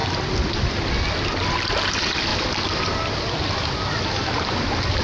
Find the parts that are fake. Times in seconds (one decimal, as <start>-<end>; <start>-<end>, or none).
none